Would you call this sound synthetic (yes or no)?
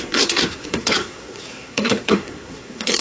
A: yes